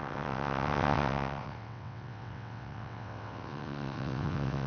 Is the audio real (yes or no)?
no